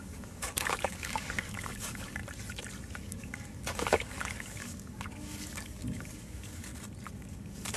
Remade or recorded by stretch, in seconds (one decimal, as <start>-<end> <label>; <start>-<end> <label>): 0.0-2.2 remade; 2.2-3.0 recorded; 3.0-6.7 remade; 6.7-7.3 recorded; 7.3-7.8 remade